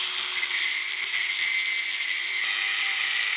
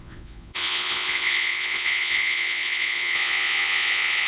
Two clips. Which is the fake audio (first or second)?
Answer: second